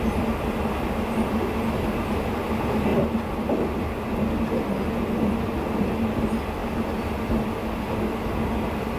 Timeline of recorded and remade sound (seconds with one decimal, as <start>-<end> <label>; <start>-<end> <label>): 0.0-9.0 recorded